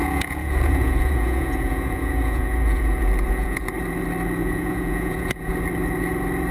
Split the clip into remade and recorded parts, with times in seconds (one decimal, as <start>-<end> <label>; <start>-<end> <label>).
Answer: 0.0-3.7 remade; 3.7-4.4 recorded; 4.4-5.5 remade; 5.5-6.5 recorded